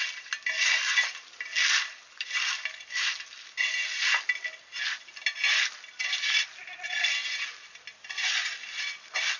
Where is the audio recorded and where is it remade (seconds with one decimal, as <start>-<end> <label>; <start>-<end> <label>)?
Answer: 0.0-9.4 recorded